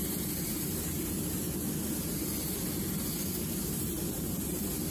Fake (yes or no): no